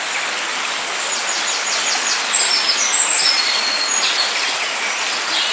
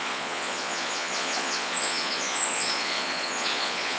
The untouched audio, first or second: first